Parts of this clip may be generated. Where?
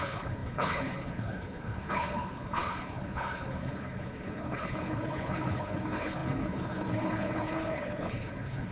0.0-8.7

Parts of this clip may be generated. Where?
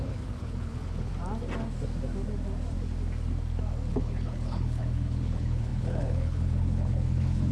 0.0-1.1; 3.9-7.5